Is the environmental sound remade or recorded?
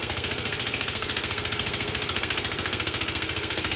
remade